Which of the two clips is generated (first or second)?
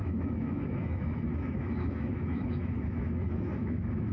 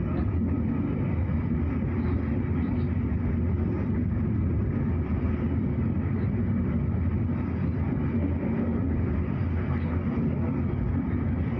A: first